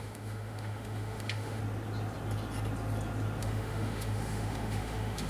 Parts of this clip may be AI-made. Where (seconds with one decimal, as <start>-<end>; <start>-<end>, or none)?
0.0-1.6; 3.4-5.3